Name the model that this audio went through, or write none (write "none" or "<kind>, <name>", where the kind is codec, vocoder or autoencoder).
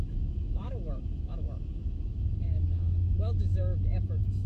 autoencoder, DAC-VAE